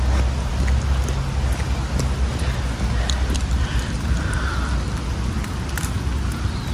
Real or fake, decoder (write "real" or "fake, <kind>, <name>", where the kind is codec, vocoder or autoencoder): real